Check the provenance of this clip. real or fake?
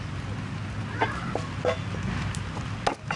real